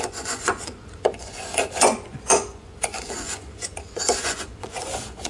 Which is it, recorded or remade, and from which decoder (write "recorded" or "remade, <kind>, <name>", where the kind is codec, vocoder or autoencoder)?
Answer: remade, vocoder, Vocos